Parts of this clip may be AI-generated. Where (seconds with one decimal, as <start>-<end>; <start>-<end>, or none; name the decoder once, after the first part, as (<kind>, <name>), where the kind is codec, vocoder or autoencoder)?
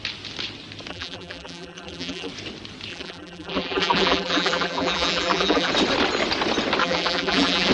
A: 0.9-2.3 (vocoder, BigVGAN v2); 2.9-5.7; 6.8-7.7